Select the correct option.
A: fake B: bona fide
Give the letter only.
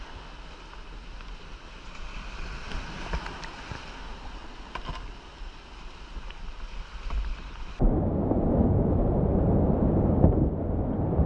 B